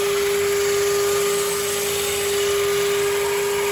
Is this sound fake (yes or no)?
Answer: no